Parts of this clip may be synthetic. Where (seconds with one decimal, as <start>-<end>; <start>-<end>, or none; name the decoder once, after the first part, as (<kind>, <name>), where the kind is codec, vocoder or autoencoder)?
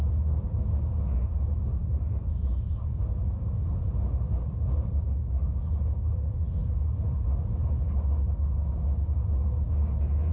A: none